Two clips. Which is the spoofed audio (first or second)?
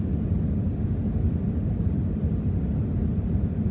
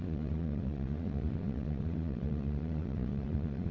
second